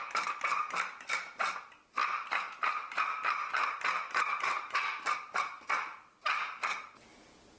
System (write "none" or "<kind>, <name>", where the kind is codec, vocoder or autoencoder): none